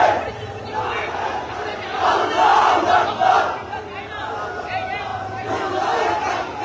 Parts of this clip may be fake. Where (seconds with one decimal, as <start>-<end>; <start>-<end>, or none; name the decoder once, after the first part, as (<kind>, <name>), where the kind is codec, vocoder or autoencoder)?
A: 2.5-3.1 (vocoder, BigVGAN v2)